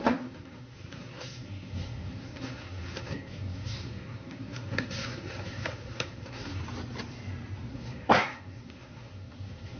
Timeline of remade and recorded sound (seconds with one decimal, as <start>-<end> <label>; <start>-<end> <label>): 0.0-6.6 remade; 6.6-7.7 recorded; 7.7-9.8 remade